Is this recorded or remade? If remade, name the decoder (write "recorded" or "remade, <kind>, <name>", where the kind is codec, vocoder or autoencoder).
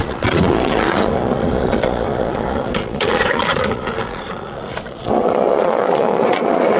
remade, vocoder, Vocos